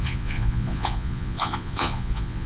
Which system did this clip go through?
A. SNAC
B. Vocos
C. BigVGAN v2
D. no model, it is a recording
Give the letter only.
B